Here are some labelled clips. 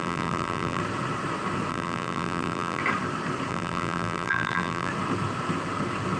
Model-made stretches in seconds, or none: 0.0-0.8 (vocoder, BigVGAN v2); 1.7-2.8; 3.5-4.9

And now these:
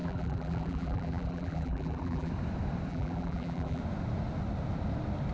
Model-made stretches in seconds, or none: 0.0-2.3 (vocoder, BigVGAN v2); 2.9-3.8

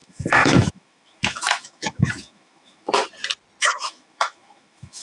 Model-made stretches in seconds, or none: 0.0-3.0 (autoencoder, DAC-VAE); 3.6-5.0

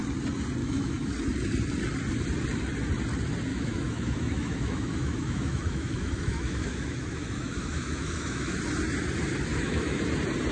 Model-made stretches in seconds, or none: 0.6-1.1 (autoencoder, DAC-VAE); 3.5-8.6; 9.5-10.0

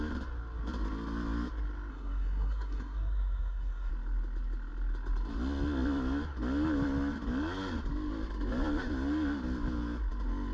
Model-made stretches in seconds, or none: 1.9-3.9 (codec, SNAC)